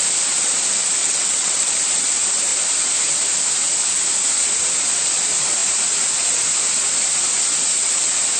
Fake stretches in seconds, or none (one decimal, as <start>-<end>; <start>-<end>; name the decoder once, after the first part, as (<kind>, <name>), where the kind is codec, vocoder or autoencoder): 1.0-1.7 (vocoder, WaveNeXt)